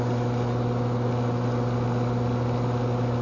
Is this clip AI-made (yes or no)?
no